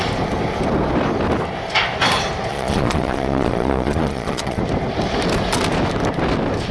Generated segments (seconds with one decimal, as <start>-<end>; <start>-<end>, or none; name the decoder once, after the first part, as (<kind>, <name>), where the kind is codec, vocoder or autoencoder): 2.5-4.6 (vocoder, Vocos)